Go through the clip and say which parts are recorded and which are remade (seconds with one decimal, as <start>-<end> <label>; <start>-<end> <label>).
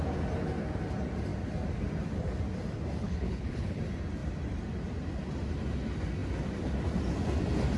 0.0-3.0 recorded; 3.0-3.8 remade; 3.8-7.8 recorded